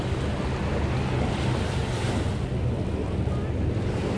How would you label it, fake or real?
real